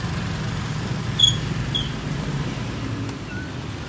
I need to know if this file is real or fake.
real